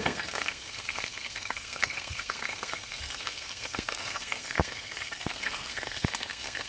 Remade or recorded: remade